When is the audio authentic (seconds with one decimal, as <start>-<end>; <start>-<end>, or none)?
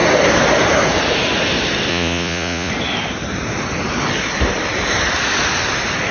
0.0-1.9; 2.7-6.1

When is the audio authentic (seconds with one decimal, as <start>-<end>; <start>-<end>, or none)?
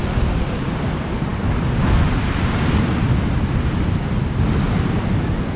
0.0-5.6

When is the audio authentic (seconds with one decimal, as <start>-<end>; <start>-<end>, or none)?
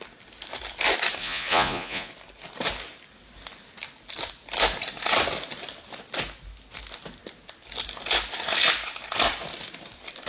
0.0-1.2; 2.1-10.3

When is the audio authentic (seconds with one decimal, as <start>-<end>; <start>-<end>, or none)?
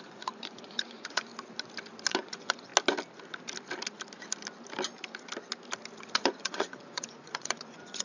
1.3-2.1; 2.7-6.1